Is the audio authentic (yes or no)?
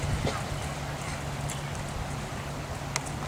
yes